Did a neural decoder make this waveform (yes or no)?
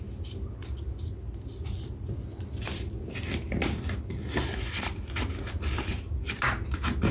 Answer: no